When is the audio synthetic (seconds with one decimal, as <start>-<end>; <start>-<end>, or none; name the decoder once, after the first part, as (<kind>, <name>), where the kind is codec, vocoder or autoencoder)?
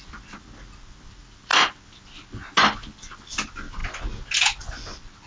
0.0-1.5 (vocoder, BigVGAN v2); 2.6-3.8; 4.6-5.3